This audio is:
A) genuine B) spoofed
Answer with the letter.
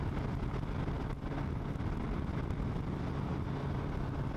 A